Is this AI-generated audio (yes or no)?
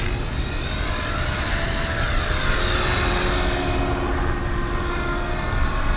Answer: yes